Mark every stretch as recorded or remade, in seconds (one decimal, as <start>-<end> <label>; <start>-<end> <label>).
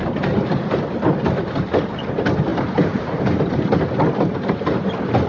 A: 0.0-5.3 recorded